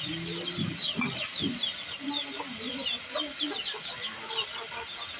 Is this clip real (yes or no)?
yes